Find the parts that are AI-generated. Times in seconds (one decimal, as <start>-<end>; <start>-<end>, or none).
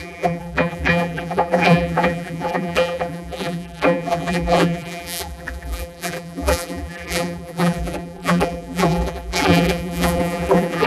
0.0-10.9